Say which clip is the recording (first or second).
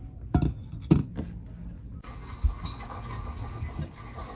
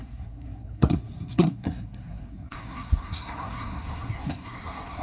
first